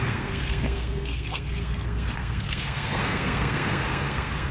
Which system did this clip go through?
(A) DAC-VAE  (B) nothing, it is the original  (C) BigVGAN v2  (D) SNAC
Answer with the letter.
D